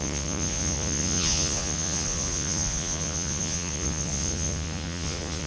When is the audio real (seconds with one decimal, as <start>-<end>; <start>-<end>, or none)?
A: none